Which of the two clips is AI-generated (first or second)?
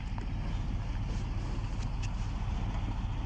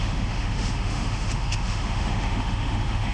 second